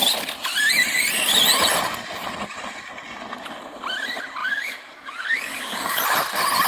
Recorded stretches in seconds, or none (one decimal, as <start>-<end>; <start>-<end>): 0.0-4.4; 6.0-6.7